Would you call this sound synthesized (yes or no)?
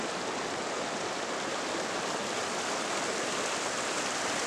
no